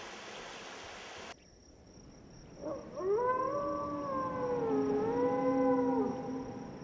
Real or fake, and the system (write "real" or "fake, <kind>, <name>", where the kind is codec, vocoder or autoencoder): real